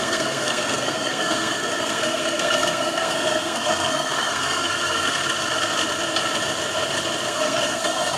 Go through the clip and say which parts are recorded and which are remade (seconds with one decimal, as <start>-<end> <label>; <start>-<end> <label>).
0.0-5.2 remade; 5.2-7.3 recorded; 7.3-8.2 remade